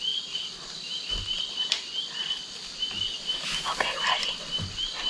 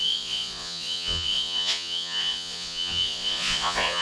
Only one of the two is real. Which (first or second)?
first